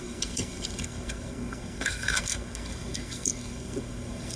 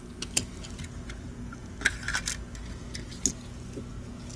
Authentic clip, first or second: second